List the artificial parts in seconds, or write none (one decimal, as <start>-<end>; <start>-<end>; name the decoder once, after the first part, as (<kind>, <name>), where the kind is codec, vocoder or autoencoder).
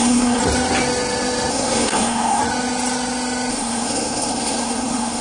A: 0.0-0.4 (codec, SNAC); 1.5-2.4; 3.5-5.2